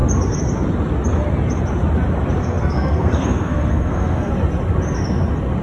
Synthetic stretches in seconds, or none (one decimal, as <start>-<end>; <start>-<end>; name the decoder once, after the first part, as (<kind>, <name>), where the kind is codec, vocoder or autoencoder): 2.4-4.3 (codec, SNAC)